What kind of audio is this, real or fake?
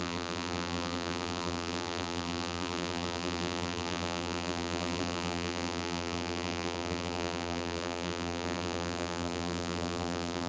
fake